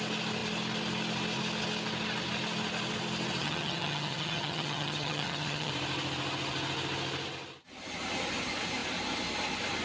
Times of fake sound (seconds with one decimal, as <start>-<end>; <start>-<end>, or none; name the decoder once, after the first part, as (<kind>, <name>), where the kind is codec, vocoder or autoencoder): 3.4-5.7 (vocoder, HiFi-GAN)